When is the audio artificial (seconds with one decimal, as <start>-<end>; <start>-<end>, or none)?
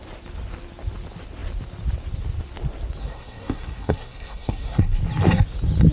3.0-4.8